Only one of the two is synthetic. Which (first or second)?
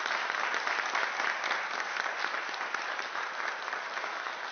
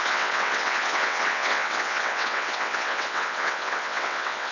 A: second